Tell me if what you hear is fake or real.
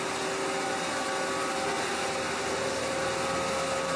real